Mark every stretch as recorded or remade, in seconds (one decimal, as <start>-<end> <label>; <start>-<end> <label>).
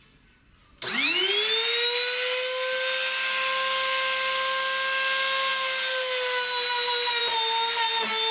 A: 0.0-8.3 recorded